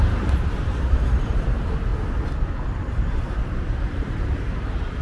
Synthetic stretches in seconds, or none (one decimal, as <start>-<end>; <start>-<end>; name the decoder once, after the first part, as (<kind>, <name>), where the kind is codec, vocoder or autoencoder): 0.0-1.9 (vocoder, BigVGAN v2); 2.7-5.0